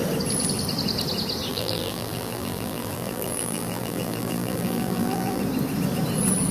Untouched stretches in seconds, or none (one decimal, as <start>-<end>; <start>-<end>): 0.0-1.5; 5.4-6.5